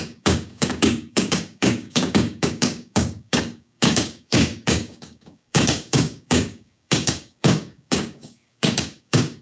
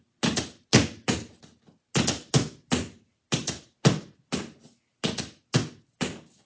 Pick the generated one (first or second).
first